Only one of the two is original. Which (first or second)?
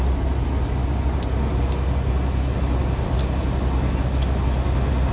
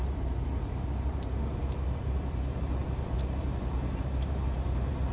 first